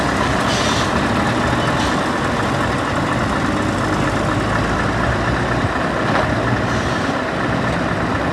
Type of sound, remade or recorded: recorded